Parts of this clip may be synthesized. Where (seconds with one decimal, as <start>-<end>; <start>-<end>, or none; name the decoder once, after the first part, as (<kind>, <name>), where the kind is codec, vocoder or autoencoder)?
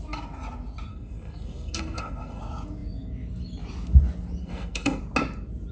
0.9-2.4 (codec, SNAC); 4.4-5.0